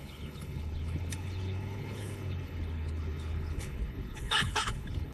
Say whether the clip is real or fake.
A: fake